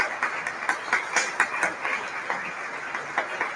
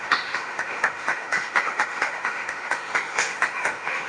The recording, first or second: first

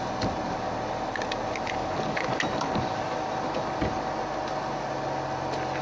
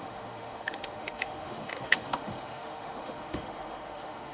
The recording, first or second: first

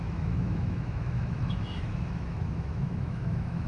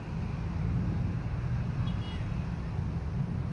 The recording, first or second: second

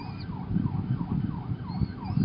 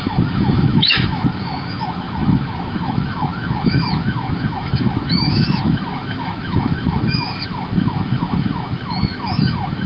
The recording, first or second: first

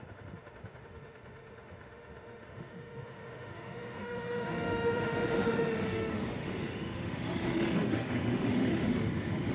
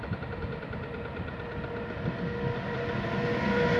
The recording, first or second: second